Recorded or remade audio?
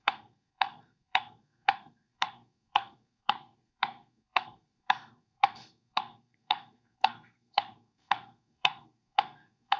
remade